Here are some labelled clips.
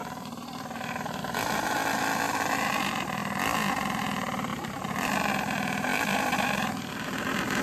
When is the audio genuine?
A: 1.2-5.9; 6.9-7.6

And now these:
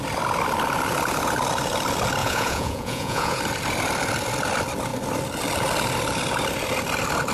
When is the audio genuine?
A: 0.0-2.2; 3.4-7.3